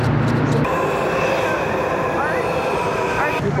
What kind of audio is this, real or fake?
real